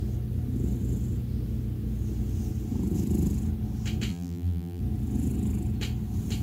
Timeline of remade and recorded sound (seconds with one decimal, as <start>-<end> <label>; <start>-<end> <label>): 0.0-4.1 recorded; 4.1-4.8 remade; 4.8-6.4 recorded